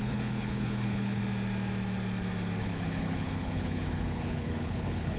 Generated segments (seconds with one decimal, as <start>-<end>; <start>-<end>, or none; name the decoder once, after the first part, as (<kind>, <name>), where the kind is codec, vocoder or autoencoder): 0.0-1.2 (codec, HILCodec); 2.6-5.2